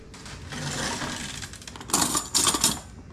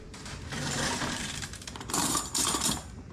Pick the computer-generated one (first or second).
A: second